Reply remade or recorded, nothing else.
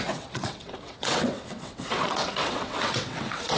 remade